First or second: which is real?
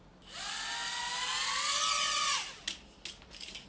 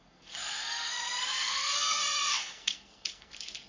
first